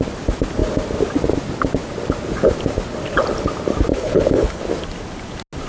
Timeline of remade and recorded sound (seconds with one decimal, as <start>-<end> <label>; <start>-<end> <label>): 0.0-3.9 recorded; 3.9-4.6 remade; 4.6-5.7 recorded